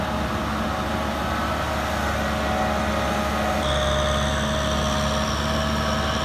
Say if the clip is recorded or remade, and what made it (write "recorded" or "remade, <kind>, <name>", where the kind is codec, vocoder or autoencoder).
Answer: recorded